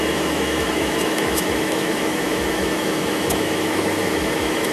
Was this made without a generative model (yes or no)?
no